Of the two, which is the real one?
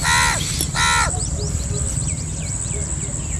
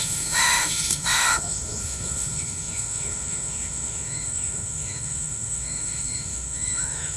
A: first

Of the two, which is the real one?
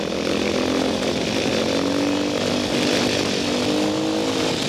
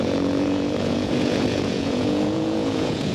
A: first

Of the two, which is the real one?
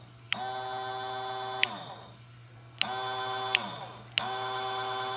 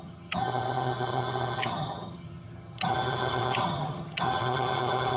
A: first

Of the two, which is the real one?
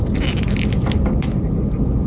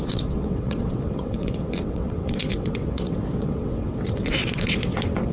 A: first